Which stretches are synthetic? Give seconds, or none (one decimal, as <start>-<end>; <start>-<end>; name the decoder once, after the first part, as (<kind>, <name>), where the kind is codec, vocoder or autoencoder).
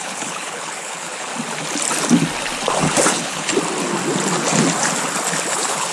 0.0-1.3 (codec, HILCodec); 3.1-3.5; 5.5-5.9